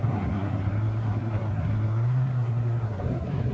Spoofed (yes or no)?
yes